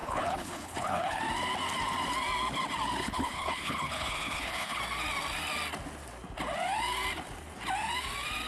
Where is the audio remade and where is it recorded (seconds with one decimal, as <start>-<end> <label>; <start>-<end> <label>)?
0.0-1.2 remade; 1.2-3.0 recorded; 3.0-4.8 remade; 4.8-8.5 recorded